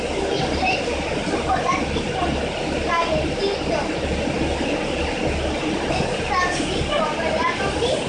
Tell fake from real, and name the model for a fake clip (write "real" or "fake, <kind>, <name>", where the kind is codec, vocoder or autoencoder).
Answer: real